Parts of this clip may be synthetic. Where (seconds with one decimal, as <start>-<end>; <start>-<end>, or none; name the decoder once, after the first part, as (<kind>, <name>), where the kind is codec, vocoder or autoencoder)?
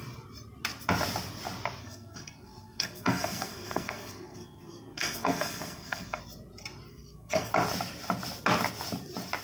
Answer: 1.8-6.2 (codec, SNAC); 6.9-7.5